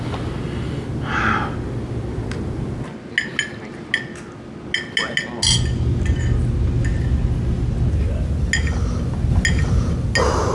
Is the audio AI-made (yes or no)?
no